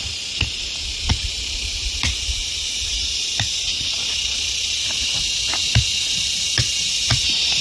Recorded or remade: recorded